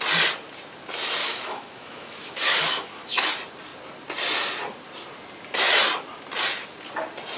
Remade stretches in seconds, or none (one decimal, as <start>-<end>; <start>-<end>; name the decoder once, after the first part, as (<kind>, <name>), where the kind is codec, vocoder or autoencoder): 1.2-3.3 (autoencoder, DAC-VAE)

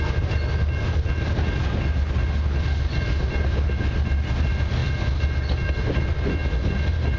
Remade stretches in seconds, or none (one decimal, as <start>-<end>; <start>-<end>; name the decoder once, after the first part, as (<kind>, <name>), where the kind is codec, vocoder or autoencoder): none

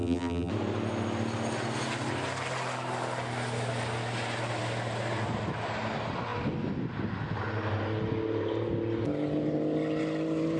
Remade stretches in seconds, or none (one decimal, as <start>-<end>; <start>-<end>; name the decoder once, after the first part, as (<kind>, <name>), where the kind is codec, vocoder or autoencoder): 0.0-0.5 (vocoder, BigVGAN v2)

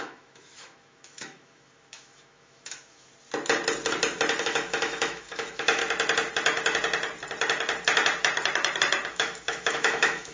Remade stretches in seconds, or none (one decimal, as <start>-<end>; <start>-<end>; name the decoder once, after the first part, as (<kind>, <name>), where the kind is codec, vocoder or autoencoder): 0.0-3.1 (autoencoder, DAC-VAE); 4.4-5.8; 9.1-10.3

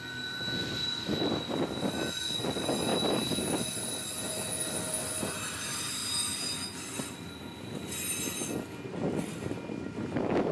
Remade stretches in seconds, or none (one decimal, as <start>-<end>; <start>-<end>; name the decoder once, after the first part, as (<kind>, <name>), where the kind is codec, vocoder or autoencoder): 1.4-1.9 (vocoder, BigVGAN v2); 6.0-7.7

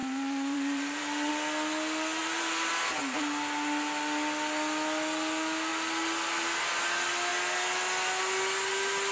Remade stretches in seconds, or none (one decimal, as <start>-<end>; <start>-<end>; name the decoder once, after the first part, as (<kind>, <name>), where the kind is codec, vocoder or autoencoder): 0.0-1.3 (vocoder, BigVGAN v2); 2.2-2.7